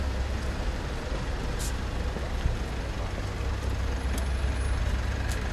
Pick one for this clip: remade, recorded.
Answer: recorded